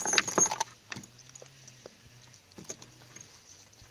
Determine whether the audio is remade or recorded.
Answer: recorded